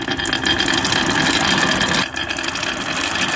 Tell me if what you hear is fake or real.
real